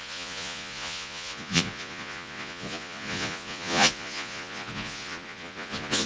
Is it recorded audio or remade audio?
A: remade